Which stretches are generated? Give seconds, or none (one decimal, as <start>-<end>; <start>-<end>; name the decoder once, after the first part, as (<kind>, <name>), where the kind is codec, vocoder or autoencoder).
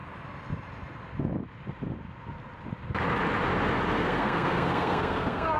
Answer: 3.9-5.6 (codec, SNAC)